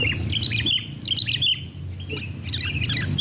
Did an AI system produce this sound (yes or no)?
no